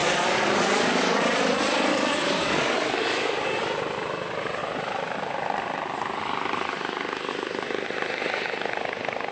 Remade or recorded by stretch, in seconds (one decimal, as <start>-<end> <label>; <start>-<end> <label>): 0.0-1.2 remade; 1.2-1.9 recorded; 1.9-3.6 remade; 3.6-9.3 recorded